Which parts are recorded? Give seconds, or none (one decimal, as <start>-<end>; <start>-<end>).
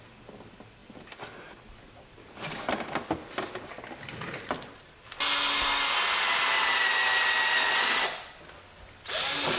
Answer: 0.0-9.6